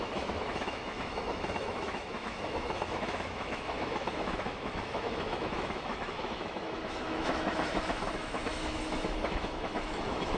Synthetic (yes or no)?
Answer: yes